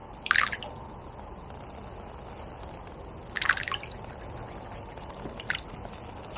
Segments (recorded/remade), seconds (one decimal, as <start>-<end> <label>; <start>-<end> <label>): 0.0-6.4 recorded